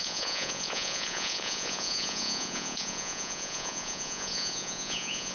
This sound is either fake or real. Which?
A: fake